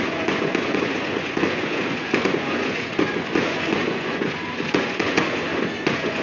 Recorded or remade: remade